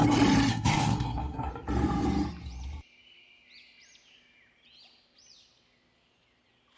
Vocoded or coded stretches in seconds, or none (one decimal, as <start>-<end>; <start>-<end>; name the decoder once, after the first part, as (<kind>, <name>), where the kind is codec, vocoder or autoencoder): 0.5-1.5 (codec, SNAC)